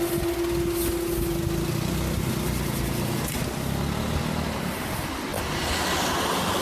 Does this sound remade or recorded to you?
recorded